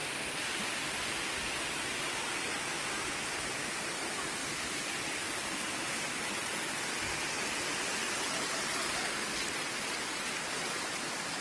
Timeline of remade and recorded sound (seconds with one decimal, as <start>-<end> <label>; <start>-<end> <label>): 0.0-11.4 recorded